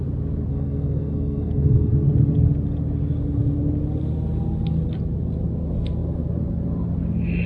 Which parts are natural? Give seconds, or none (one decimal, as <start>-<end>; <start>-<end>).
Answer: 0.0-0.5; 1.9-7.5

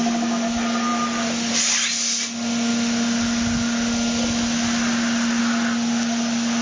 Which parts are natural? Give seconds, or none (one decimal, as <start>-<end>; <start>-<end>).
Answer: 0.0-6.6

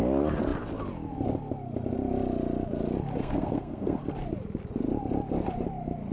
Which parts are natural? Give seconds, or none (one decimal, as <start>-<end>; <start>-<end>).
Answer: 0.0-3.2; 4.0-6.1

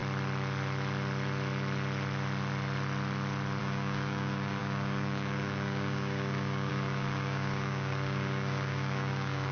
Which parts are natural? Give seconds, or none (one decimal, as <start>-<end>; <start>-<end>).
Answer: 0.0-3.6